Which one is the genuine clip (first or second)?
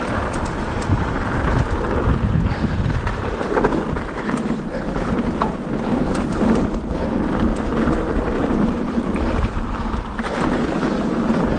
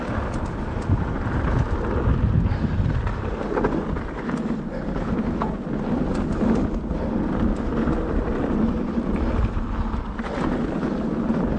second